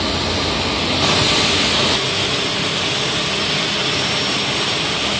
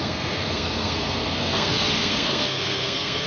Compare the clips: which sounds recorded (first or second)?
first